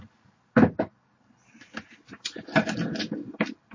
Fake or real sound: real